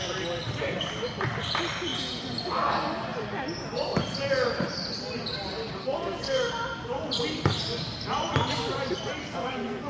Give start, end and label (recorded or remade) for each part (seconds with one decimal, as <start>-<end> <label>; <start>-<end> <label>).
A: 0.0-5.8 recorded; 5.8-6.5 remade; 6.5-9.2 recorded; 9.2-9.9 remade